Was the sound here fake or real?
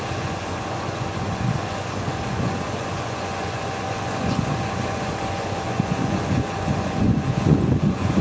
fake